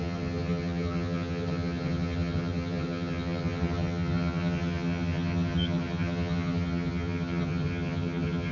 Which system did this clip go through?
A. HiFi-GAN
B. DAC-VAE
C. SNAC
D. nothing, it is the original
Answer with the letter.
A